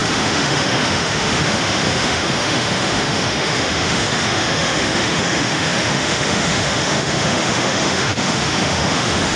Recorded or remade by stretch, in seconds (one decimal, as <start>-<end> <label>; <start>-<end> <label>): 0.0-9.4 remade